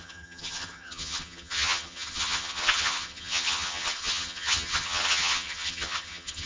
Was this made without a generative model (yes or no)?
no